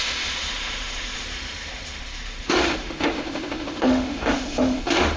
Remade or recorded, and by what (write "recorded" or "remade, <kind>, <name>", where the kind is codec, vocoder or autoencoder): remade, autoencoder, DAC-VAE